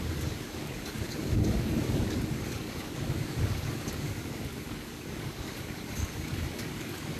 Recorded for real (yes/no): no